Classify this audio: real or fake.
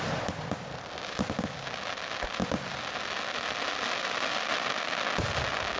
real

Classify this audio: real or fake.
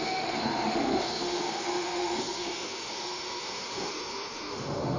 fake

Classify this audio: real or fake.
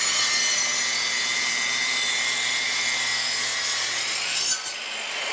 real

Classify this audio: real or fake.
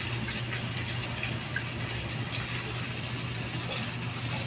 real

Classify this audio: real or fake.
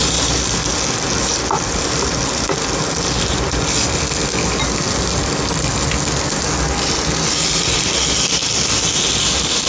real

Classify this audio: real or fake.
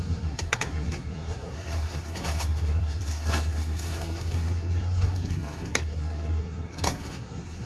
fake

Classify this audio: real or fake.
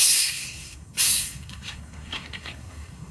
fake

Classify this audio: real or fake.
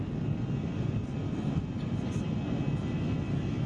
real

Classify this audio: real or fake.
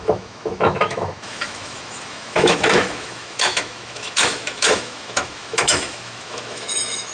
fake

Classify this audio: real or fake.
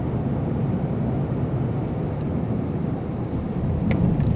real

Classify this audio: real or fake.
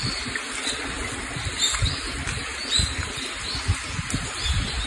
real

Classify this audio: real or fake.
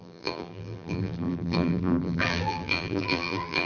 fake